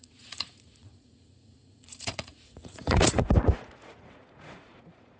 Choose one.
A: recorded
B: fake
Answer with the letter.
B